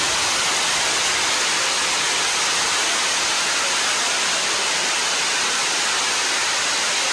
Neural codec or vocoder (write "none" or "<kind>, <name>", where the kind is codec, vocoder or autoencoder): none